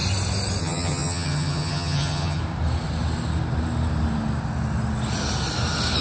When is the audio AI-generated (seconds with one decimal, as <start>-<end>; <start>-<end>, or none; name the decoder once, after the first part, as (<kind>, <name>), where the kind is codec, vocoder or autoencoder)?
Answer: 0.6-2.4 (vocoder, HiFi-GAN)